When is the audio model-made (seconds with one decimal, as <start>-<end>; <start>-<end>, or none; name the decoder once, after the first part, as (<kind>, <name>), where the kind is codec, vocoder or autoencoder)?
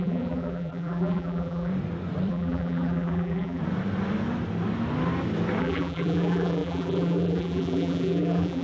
0.0-1.7 (vocoder, BigVGAN v2); 2.3-3.6; 5.6-8.6